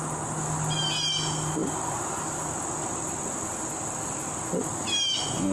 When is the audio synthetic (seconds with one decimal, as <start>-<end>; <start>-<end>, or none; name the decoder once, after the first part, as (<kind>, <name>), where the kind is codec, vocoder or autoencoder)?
none